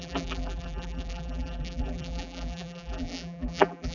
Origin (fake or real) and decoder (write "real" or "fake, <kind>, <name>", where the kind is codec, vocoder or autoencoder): fake, vocoder, BigVGAN v2